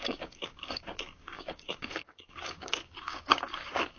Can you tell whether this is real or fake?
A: fake